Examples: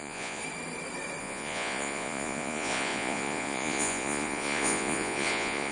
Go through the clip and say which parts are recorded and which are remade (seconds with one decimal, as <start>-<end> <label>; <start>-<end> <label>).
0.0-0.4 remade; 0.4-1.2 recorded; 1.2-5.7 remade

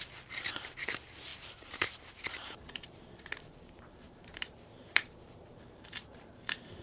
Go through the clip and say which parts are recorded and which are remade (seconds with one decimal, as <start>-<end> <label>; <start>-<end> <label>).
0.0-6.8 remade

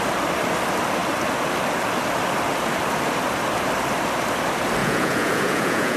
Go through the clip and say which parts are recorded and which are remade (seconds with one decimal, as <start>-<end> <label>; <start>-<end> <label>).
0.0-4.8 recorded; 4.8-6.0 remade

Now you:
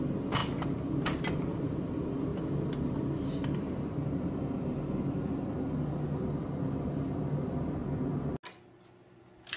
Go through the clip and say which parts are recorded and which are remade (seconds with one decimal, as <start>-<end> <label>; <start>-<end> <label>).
0.0-9.6 recorded

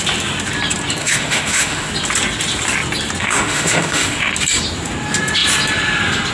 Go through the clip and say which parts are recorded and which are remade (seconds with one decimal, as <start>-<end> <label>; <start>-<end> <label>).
0.0-1.0 recorded; 1.0-1.9 remade; 1.9-3.2 recorded; 3.2-4.3 remade; 4.3-6.3 recorded